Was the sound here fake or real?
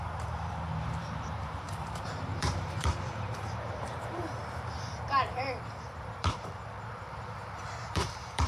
fake